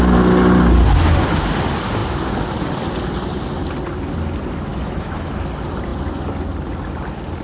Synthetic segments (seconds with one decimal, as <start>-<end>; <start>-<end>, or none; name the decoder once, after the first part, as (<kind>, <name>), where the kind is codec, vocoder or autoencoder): 4.7-5.3 (autoencoder, DAC-VAE)